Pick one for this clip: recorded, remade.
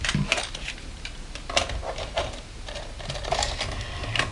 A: recorded